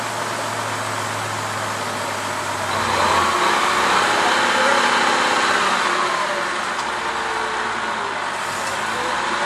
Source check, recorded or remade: recorded